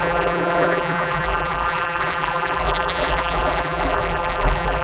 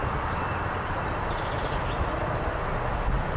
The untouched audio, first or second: second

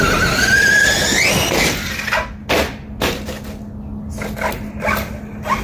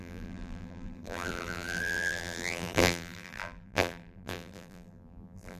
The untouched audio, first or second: first